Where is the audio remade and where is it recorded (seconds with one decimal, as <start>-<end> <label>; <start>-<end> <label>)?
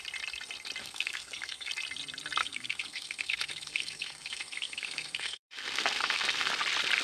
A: 0.0-0.8 recorded; 0.8-1.7 remade; 1.7-2.4 recorded; 2.4-6.5 remade; 6.5-7.0 recorded